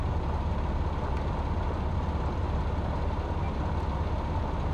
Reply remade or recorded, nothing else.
recorded